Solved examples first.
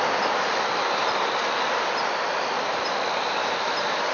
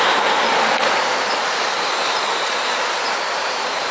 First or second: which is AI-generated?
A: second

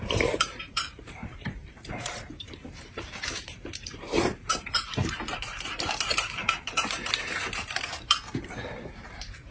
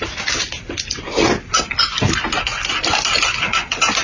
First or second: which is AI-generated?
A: first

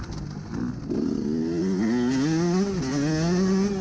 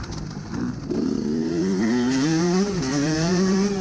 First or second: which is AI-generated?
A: second